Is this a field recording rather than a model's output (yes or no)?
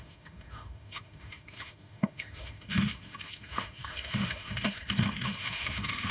no